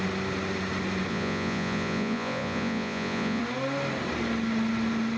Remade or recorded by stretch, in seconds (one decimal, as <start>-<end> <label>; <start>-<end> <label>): 0.0-1.1 recorded; 1.1-3.4 remade; 3.4-5.2 recorded